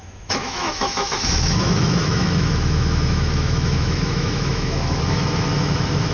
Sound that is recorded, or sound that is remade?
remade